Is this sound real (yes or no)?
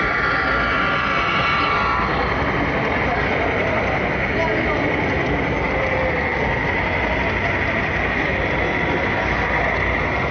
yes